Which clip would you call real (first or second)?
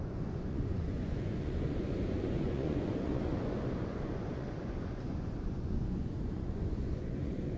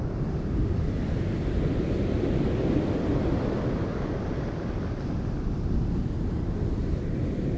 second